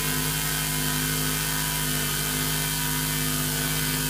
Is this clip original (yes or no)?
yes